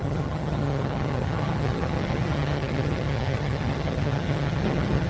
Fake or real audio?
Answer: fake